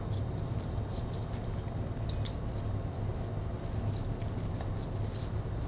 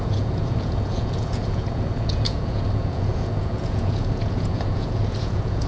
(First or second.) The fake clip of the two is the second